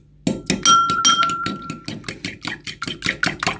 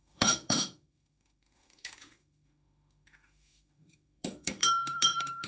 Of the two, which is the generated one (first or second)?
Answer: second